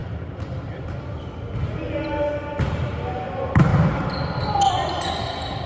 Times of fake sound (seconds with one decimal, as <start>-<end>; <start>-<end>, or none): none